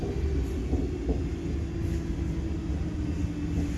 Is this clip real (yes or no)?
yes